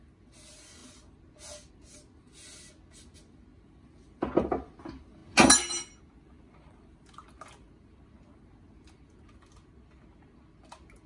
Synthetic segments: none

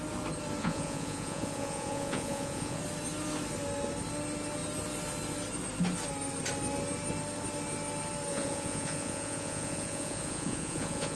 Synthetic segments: 0.6-2.8 (vocoder, Vocos); 8.3-11.2

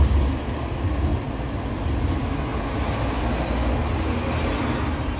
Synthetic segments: none

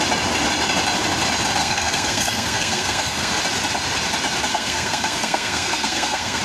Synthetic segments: 1.6-3.4 (codec, SNAC); 4.5-6.4

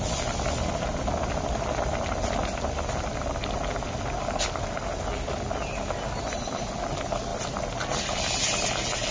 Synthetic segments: none

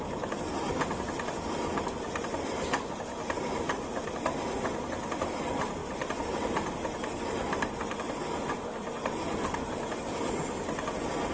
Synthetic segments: 5.8-6.4 (vocoder, BigVGAN v2)

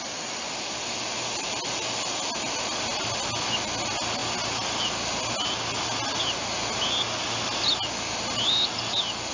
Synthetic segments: none